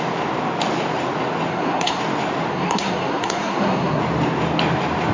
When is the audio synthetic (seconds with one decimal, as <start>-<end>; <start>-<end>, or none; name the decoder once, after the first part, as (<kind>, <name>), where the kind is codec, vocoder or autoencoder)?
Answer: 1.5-2.0 (codec, SNAC); 2.5-4.0